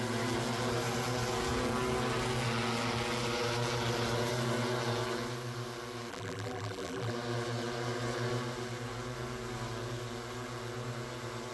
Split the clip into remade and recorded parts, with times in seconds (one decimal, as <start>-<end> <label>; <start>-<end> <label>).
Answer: 0.0-6.1 recorded; 6.1-7.1 remade; 7.1-11.5 recorded